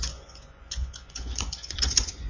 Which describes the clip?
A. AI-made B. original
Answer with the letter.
A